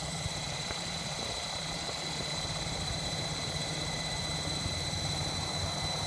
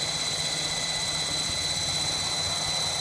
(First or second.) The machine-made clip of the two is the first